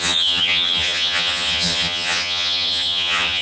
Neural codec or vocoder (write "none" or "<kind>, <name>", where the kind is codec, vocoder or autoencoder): vocoder, HiFi-GAN